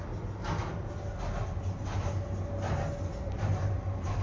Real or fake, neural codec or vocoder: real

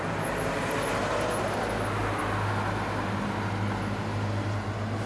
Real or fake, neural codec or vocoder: real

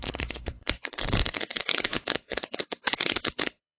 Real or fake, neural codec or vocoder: fake, codec, HILCodec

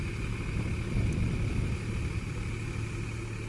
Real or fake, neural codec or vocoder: real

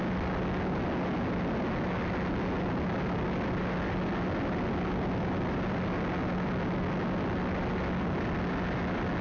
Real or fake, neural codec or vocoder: real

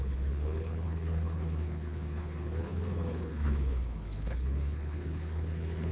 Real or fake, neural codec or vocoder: fake, codec, HILCodec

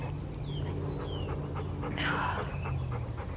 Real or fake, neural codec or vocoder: real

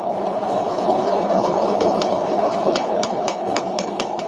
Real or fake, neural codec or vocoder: fake, codec, HILCodec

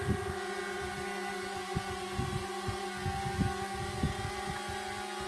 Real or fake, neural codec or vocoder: real